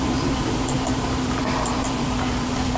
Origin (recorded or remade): remade